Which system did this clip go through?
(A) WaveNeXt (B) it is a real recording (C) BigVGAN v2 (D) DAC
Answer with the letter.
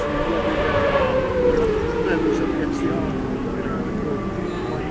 B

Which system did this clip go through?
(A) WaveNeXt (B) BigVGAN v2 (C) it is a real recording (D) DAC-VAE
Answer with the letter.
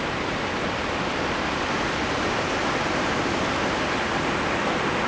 C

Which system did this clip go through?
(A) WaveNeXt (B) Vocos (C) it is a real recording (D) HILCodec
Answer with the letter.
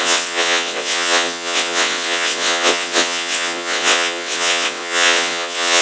A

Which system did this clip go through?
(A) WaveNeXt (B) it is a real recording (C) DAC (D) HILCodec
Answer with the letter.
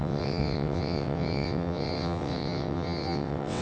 A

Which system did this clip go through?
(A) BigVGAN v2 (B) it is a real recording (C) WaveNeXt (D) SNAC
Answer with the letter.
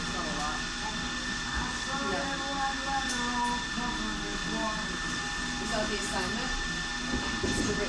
B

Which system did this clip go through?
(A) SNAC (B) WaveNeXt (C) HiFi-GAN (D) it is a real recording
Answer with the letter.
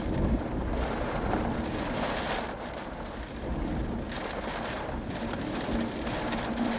D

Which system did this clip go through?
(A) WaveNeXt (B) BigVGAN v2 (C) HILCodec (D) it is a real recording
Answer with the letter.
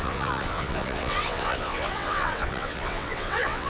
A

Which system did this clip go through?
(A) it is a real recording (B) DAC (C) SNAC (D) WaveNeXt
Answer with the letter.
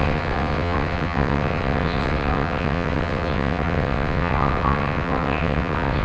D